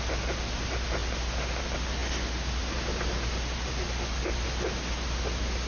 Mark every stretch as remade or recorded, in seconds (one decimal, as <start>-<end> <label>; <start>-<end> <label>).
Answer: 0.0-5.7 recorded